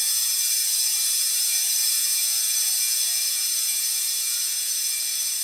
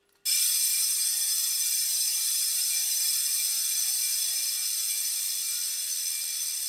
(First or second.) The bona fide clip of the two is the second